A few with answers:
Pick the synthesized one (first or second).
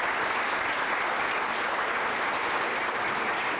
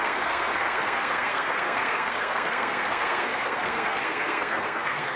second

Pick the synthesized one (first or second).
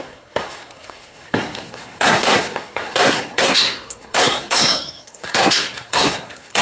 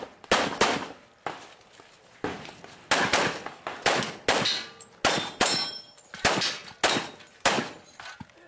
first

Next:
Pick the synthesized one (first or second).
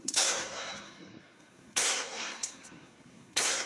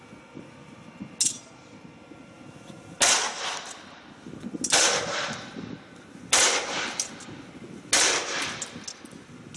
first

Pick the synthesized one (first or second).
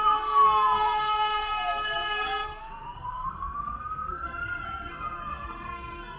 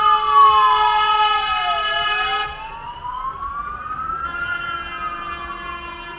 first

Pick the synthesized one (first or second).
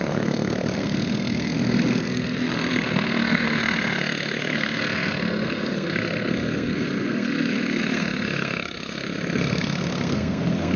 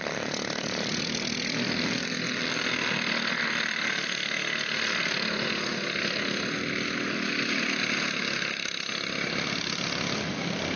first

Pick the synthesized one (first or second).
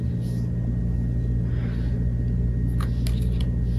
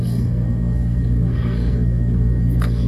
second